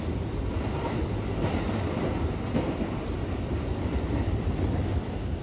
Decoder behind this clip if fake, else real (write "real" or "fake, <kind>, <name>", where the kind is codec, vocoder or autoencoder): real